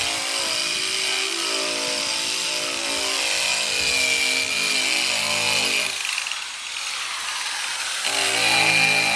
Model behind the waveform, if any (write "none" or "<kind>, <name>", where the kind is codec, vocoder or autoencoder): none